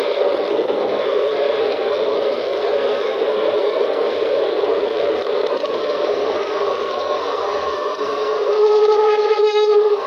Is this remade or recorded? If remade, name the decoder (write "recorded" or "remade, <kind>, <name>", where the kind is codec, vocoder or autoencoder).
remade, codec, SNAC